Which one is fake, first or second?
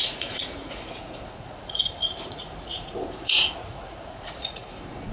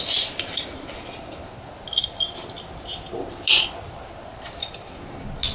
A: first